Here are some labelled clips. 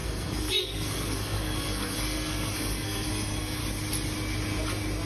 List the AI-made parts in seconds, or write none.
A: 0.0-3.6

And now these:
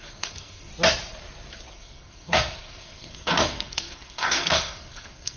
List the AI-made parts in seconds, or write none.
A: 0.0-0.7; 1.7-5.4

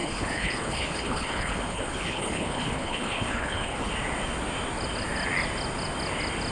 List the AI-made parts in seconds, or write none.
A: 0.0-3.9

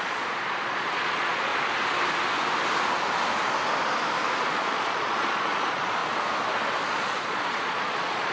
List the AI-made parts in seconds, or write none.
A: 0.0-1.5; 4.4-6.0; 6.9-8.3

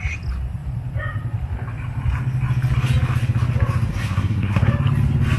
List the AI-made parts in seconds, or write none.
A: 3.9-4.7

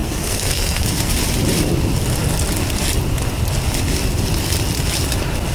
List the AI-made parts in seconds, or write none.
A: 0.0-1.1